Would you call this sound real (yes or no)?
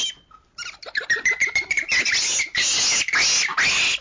yes